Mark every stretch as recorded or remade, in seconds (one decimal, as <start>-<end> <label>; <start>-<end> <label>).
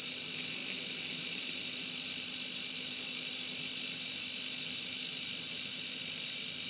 0.0-6.7 recorded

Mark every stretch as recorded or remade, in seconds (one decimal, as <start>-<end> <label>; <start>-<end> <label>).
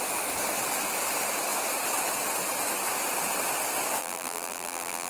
0.0-4.0 recorded; 4.0-5.1 remade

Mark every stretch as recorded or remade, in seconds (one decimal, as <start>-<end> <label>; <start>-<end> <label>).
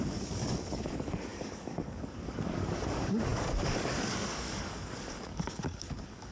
0.0-6.3 remade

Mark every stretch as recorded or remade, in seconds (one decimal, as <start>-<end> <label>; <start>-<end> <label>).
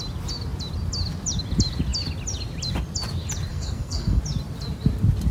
0.0-3.5 recorded; 3.5-4.2 remade; 4.2-5.3 recorded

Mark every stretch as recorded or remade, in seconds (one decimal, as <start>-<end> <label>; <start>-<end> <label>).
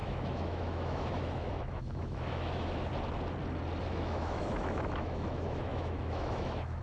0.0-2.9 remade; 2.9-3.8 recorded; 3.8-6.8 remade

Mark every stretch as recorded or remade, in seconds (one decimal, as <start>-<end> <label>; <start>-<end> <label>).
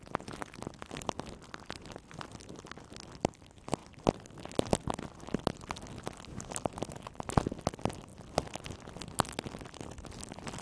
0.0-10.6 recorded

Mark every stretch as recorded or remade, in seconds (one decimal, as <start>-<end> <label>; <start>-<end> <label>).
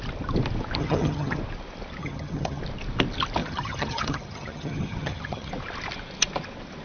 0.0-0.8 recorded; 0.8-1.4 remade; 1.4-2.0 recorded; 2.0-2.6 remade; 2.6-3.4 recorded; 3.4-5.5 remade; 5.5-6.8 recorded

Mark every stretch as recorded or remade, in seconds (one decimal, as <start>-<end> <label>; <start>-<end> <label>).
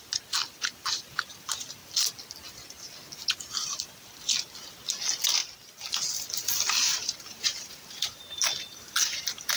0.0-6.9 recorded; 6.9-8.4 remade; 8.4-9.6 recorded